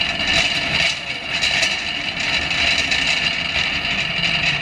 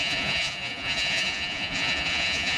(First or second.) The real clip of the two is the first